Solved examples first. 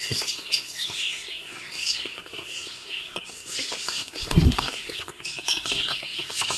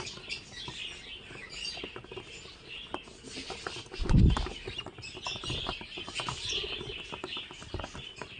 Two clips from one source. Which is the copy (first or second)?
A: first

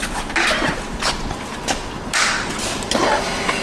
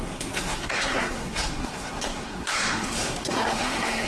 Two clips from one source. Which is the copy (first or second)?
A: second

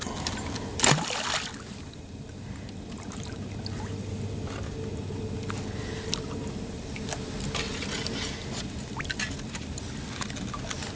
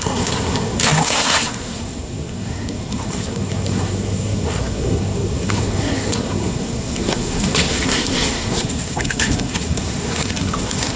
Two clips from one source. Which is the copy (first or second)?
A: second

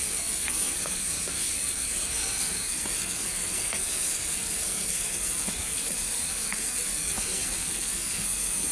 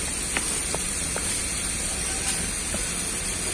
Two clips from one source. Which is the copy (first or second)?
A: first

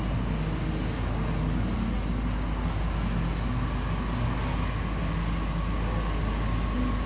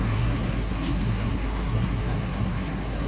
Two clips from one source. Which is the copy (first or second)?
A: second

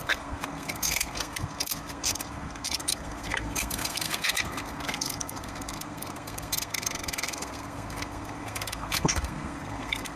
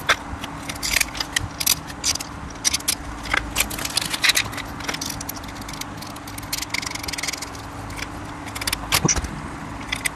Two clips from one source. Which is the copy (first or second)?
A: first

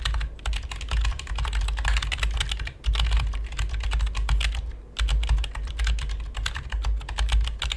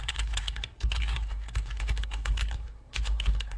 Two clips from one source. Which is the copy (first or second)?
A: second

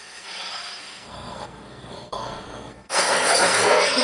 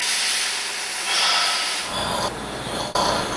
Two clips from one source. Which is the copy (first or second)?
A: first